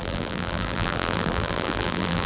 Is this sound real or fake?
fake